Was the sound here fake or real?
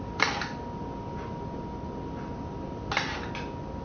real